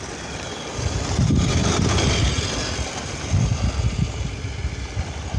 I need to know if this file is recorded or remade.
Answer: remade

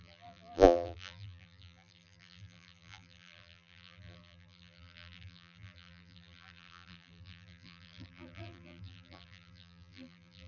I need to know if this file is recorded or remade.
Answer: remade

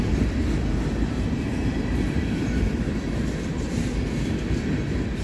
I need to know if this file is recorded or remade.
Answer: remade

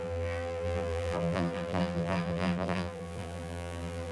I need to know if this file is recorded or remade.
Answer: remade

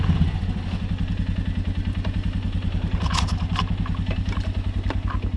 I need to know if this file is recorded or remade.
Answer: recorded